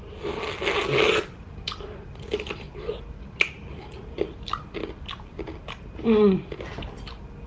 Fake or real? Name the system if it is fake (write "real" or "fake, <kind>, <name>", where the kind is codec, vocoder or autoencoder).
real